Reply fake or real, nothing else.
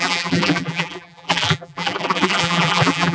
fake